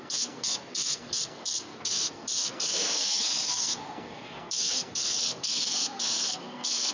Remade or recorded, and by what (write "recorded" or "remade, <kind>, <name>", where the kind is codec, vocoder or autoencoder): remade, codec, SNAC